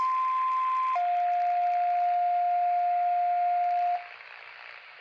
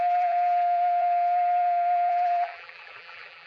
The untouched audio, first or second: first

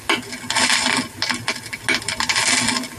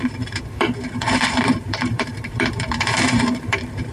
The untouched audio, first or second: first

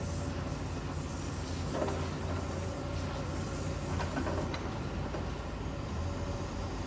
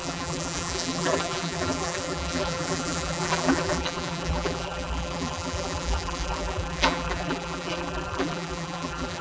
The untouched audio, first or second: first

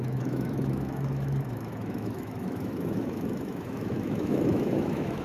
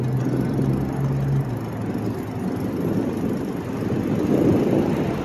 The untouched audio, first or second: second